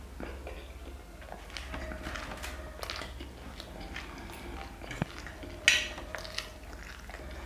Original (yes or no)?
yes